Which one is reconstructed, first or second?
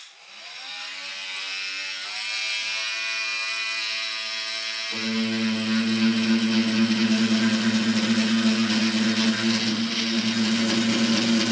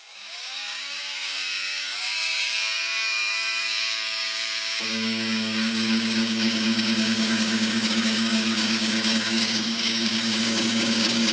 second